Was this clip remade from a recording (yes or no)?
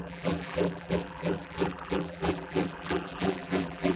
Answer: yes